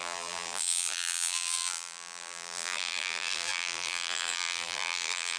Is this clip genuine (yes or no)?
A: no